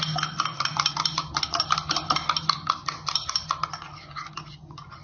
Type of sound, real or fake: real